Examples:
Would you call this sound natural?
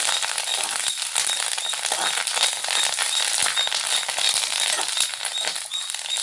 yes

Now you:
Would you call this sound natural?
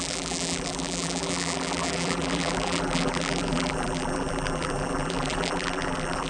no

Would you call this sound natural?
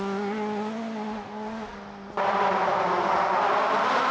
yes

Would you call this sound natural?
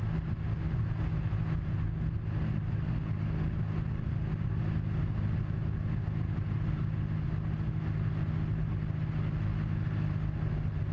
yes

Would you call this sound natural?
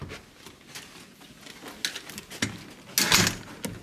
yes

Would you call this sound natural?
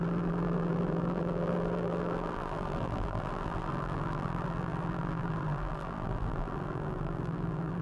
no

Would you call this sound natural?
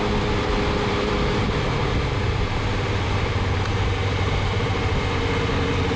no